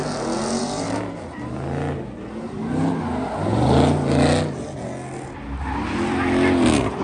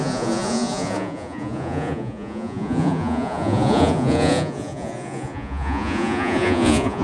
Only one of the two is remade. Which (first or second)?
second